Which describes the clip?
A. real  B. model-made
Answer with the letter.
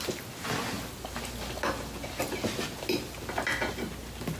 A